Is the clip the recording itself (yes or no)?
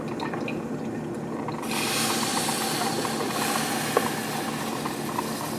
yes